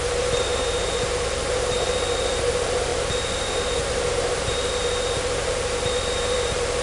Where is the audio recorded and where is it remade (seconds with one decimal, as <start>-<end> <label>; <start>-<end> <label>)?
0.0-6.8 remade